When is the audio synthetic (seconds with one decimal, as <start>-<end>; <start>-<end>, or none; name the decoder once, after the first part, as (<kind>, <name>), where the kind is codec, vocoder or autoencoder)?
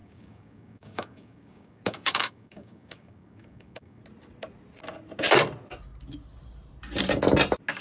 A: 0.0-4.0 (codec, DAC)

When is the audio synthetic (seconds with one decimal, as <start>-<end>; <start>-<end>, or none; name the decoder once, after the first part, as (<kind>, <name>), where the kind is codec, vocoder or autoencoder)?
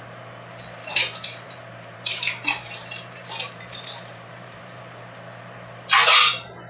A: 0.8-4.8 (vocoder, BigVGAN v2)